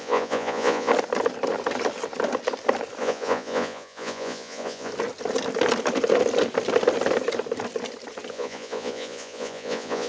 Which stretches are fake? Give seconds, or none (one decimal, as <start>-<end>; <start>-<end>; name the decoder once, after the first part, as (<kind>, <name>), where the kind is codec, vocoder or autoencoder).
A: 0.0-0.9 (vocoder, Vocos); 3.0-4.9; 8.3-10.1